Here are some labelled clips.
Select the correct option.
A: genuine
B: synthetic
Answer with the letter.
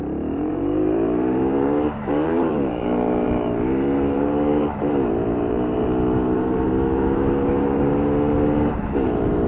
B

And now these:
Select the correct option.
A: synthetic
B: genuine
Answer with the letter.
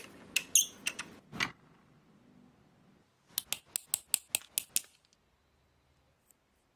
B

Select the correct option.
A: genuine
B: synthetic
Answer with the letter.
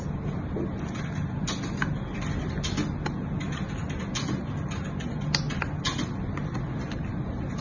A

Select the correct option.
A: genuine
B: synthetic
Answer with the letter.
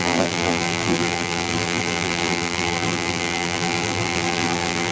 B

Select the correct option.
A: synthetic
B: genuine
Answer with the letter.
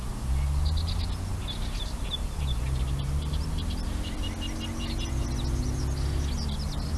B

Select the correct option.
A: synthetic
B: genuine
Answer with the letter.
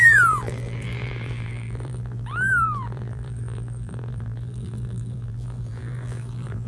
A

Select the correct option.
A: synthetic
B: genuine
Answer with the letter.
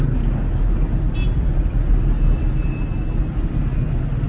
B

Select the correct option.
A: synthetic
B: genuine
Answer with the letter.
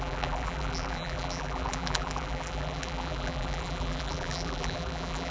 A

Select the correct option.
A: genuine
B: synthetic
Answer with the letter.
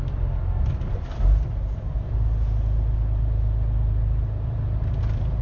B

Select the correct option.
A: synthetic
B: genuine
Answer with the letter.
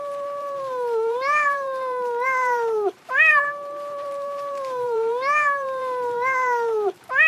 A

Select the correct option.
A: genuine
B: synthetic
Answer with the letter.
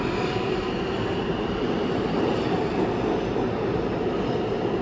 A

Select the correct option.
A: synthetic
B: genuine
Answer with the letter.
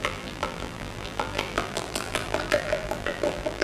A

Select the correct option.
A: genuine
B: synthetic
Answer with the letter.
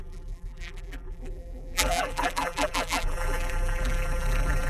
B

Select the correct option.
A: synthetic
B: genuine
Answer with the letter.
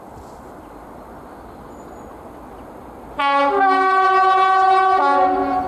B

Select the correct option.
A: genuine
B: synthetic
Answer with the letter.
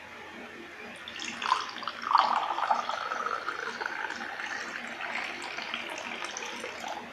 A